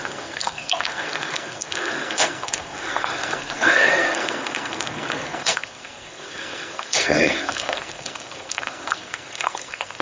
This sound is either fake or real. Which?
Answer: fake